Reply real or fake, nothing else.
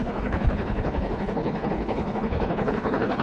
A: fake